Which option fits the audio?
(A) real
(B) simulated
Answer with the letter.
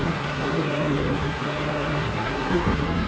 B